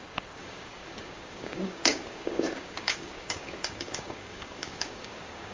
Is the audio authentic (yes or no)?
no